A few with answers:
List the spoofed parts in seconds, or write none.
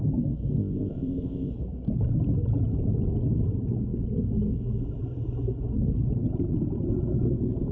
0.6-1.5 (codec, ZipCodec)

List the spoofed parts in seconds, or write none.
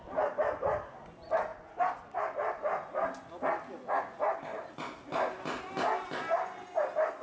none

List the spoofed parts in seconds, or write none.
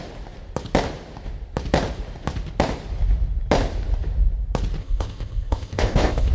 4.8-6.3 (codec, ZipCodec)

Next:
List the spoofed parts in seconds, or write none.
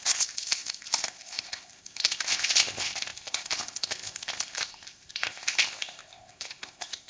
0.0-7.1 (codec, ZipCodec)